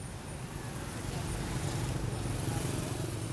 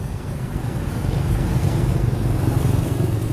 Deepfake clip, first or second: second